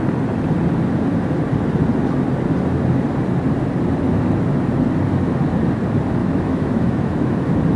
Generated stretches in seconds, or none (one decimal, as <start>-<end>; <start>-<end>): 6.2-7.3